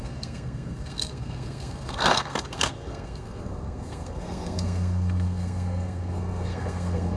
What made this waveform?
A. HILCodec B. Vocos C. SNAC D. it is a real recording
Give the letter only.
C